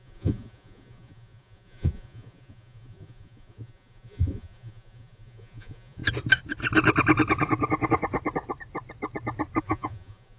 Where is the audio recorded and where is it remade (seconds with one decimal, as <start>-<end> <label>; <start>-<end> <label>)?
0.0-6.0 remade; 6.0-9.6 recorded; 9.6-10.4 remade